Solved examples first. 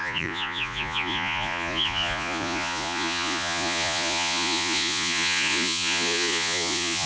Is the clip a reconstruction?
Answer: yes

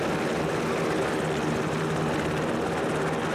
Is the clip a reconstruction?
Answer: no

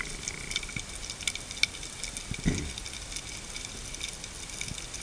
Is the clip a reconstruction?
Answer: no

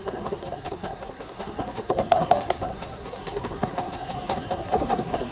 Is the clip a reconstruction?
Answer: yes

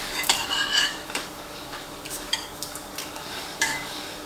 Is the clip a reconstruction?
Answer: yes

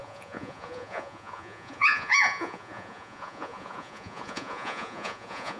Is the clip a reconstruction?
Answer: yes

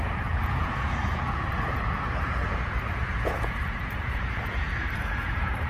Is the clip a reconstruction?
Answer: yes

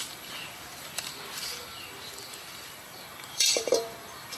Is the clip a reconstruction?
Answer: yes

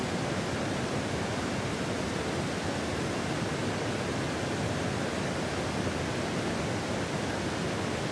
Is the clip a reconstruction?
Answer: no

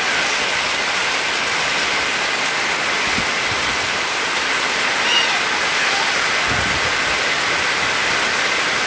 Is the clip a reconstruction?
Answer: no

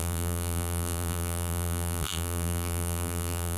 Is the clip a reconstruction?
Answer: yes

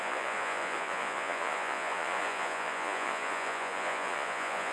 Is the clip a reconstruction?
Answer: yes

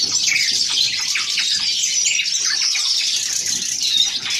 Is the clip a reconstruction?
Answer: no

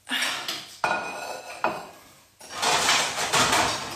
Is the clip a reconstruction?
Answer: no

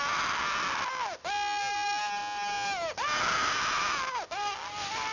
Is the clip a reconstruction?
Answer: no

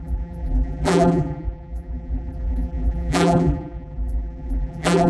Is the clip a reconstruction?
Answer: yes